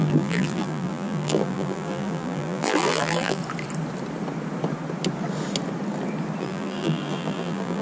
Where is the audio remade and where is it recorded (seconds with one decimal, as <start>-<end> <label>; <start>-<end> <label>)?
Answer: 0.0-3.4 remade; 3.4-6.4 recorded; 6.4-7.8 remade